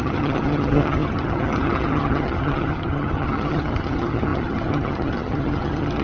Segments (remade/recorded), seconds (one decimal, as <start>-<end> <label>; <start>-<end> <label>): 0.0-6.0 remade